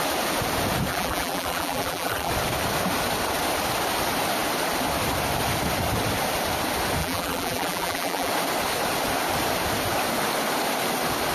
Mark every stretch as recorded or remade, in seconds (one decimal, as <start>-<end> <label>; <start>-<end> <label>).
0.0-0.9 recorded; 0.9-2.3 remade; 2.3-7.0 recorded; 7.0-8.3 remade; 8.3-11.3 recorded